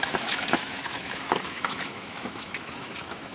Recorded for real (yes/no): no